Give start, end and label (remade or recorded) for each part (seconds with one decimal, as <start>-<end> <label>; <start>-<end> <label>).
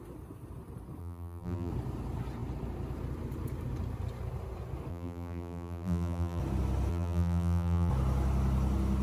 0.0-1.0 recorded; 1.0-1.7 remade; 1.7-4.9 recorded; 4.9-6.4 remade; 6.4-6.9 recorded; 6.9-7.9 remade; 7.9-9.0 recorded